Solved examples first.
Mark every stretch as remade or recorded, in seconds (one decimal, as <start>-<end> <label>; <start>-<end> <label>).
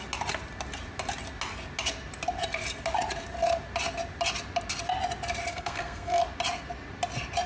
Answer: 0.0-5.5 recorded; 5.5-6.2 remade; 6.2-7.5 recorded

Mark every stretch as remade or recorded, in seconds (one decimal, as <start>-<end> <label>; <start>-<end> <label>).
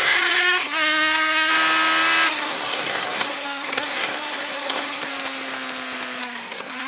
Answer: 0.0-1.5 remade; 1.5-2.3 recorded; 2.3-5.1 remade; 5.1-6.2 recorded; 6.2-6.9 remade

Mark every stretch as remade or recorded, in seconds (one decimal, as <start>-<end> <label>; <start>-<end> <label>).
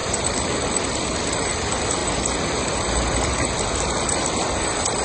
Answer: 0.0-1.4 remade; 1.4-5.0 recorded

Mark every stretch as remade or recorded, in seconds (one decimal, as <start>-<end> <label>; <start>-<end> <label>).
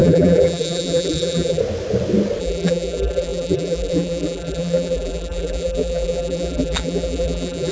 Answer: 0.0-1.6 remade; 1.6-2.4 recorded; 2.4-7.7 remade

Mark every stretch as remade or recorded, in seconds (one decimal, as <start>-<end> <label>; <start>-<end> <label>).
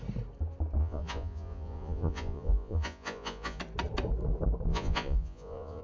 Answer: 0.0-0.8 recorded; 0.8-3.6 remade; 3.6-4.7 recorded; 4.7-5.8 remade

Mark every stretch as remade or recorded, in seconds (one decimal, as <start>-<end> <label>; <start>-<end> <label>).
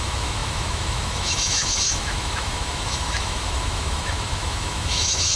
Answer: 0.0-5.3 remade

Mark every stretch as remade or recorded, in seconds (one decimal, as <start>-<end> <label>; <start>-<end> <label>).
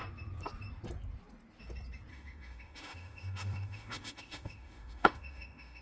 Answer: 0.0-2.1 recorded; 2.1-5.8 remade